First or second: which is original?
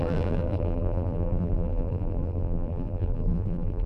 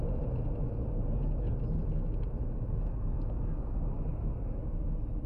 second